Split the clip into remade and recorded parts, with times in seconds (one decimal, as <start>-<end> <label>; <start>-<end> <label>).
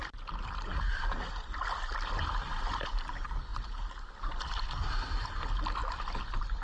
0.0-6.6 recorded